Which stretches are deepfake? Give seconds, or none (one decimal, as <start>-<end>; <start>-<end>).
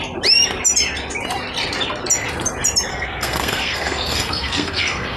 2.9-5.2